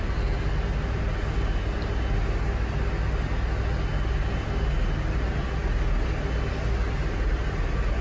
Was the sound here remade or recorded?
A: recorded